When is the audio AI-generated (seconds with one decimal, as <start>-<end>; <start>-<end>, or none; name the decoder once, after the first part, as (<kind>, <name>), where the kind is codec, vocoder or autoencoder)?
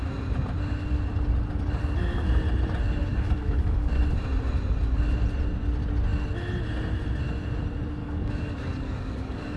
3.1-3.9 (codec, DAC); 8.0-9.6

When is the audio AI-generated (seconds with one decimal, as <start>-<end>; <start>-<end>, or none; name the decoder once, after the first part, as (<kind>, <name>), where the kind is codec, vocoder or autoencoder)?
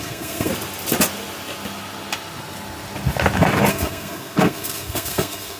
0.0-0.5 (codec, SNAC); 3.7-5.6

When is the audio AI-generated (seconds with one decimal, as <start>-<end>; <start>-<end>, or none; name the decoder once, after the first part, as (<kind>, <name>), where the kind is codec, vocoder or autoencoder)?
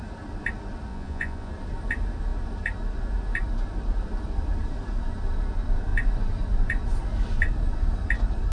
0.9-1.5 (vocoder, Vocos)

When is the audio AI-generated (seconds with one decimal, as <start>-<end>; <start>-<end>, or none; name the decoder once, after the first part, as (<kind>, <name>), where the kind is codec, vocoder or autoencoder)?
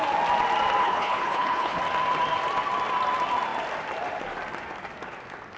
0.8-1.8 (codec, HILCodec)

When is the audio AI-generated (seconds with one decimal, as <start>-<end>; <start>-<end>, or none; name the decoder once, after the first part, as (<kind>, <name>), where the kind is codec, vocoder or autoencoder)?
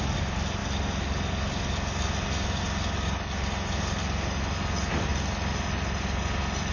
none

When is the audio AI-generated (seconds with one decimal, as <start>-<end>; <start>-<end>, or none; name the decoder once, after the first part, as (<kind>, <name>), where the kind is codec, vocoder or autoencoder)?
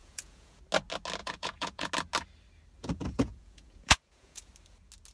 0.0-0.6 (vocoder, Vocos); 1.2-1.9; 2.8-4.5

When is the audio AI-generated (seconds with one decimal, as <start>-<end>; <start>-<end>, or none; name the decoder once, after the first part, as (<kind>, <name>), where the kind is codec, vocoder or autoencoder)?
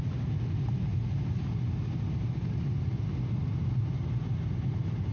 none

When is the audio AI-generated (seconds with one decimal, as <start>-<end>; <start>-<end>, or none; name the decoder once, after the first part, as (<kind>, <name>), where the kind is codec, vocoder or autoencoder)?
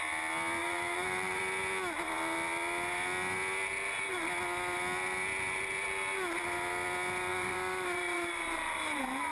0.6-1.4 (vocoder, BigVGAN v2); 7.3-9.3